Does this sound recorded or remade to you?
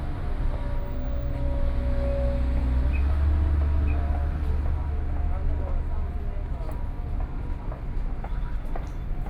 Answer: recorded